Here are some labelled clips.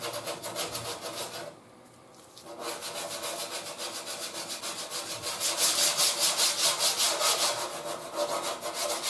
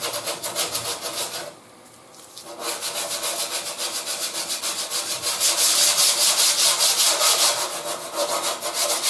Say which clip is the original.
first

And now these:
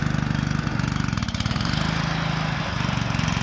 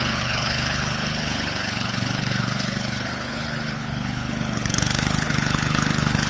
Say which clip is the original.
first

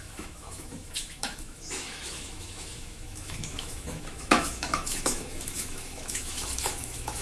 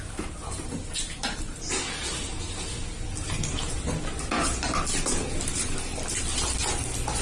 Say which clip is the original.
second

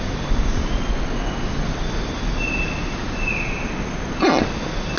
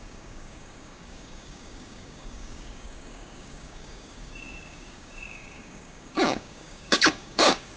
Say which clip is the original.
first